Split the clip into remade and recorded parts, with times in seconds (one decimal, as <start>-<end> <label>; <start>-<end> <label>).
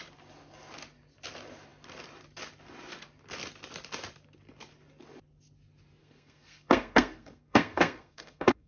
0.0-6.0 recorded; 6.0-8.7 remade